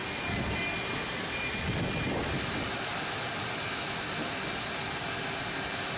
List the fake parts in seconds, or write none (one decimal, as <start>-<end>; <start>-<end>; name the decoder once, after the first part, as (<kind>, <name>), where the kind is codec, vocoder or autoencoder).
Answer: none